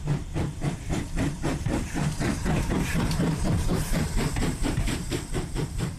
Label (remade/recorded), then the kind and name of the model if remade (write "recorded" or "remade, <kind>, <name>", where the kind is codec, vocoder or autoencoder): remade, vocoder, BigVGAN v2